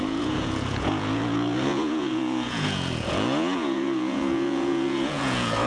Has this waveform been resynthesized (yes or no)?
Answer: yes